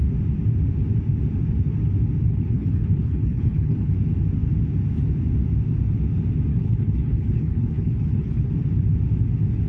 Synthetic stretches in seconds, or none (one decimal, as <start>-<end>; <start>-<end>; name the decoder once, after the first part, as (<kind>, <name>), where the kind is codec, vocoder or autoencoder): 2.3-3.9 (codec, HILCodec); 6.5-8.5